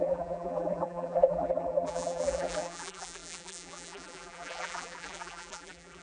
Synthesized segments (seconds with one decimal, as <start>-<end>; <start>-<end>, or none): 0.0-6.0